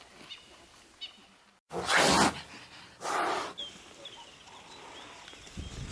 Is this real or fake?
real